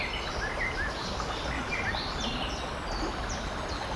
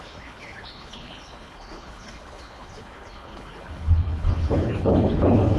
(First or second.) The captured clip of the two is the first